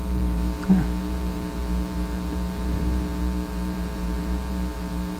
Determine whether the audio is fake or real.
fake